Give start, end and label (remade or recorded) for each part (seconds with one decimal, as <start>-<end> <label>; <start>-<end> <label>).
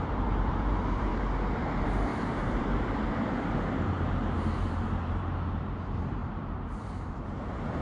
0.0-1.1 remade; 1.1-1.6 recorded; 1.6-7.8 remade